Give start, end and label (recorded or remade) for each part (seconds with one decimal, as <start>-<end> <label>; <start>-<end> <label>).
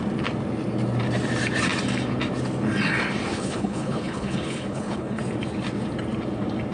0.0-3.3 recorded; 3.3-5.2 remade; 5.2-6.7 recorded